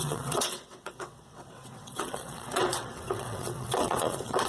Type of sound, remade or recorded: remade